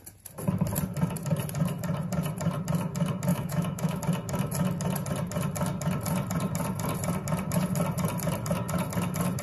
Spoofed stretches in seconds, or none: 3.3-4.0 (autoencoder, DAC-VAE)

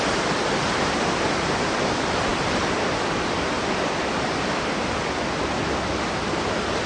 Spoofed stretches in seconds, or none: none

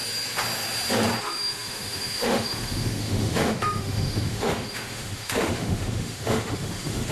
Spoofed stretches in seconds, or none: 1.2-7.1 (autoencoder, DAC-VAE)

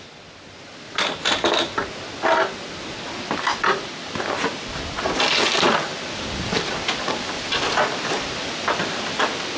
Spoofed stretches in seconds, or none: none

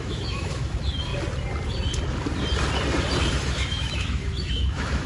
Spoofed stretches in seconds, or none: 0.0-1.1 (autoencoder, DAC-VAE); 3.3-5.1

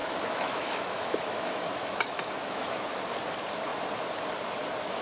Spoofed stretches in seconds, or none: 0.0-3.0 (autoencoder, DAC-VAE)

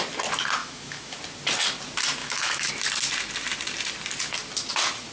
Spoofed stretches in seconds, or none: 0.6-1.2 (autoencoder, DAC-VAE); 2.2-2.7